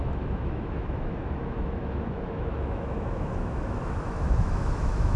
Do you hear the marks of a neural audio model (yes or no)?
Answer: yes